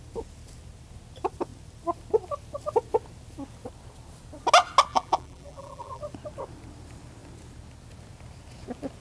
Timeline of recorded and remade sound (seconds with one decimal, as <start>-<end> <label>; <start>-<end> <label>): 0.0-4.9 recorded; 4.9-6.0 remade; 6.0-9.0 recorded